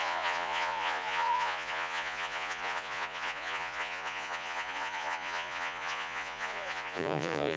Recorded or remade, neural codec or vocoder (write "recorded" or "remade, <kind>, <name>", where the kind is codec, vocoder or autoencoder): remade, vocoder, Vocos